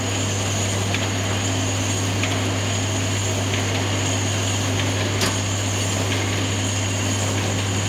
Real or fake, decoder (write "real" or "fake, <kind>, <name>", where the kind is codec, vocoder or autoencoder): real